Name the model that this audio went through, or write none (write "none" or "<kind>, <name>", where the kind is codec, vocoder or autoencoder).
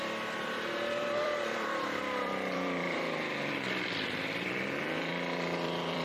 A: vocoder, BigVGAN v2